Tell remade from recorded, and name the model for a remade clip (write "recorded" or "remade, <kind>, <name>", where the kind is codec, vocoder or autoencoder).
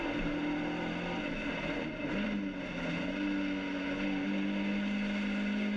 recorded